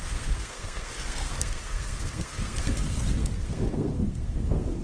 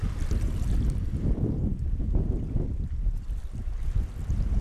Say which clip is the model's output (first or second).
first